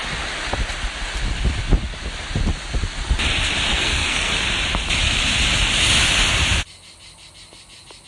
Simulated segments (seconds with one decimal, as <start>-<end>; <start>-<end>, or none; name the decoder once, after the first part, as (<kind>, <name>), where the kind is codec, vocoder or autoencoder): 3.7-4.3 (codec, SNAC)